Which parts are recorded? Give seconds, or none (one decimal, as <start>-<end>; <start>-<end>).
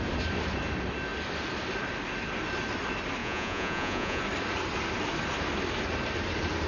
0.0-3.2; 4.2-6.7